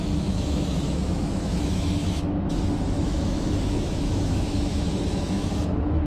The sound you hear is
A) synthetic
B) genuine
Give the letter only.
A